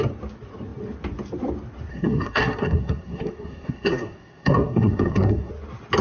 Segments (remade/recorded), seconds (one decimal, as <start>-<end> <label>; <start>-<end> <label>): 0.0-1.9 recorded; 1.9-5.5 remade; 5.5-6.0 recorded